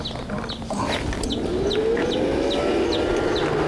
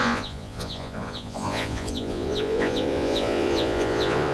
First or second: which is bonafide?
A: first